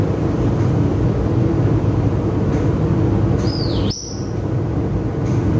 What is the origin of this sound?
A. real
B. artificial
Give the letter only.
A